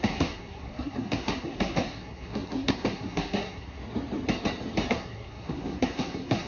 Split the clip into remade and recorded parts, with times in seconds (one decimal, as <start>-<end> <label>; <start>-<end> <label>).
0.0-3.8 remade; 3.8-4.9 recorded; 4.9-6.5 remade